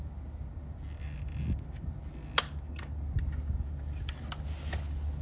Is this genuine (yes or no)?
yes